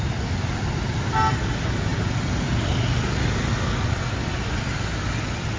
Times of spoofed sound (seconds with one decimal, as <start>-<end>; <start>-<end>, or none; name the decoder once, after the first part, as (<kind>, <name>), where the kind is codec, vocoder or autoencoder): none